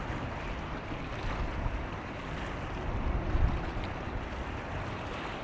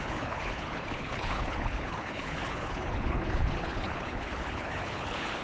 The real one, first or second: first